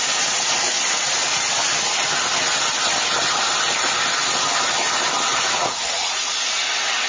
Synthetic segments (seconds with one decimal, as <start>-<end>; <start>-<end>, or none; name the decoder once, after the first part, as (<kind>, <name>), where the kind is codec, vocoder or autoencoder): 5.3-6.3 (vocoder, Vocos)